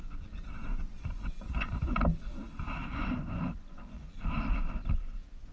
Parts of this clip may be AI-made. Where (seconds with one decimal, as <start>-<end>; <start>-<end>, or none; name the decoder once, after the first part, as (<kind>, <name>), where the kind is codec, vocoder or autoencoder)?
0.7-2.0 (vocoder, Vocos); 2.8-4.1